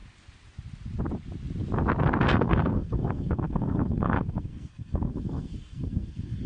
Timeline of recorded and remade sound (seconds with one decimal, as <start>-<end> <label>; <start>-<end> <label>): 0.0-2.3 recorded; 2.3-6.5 remade